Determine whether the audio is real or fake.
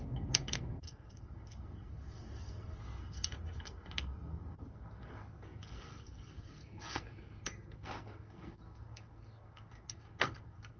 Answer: fake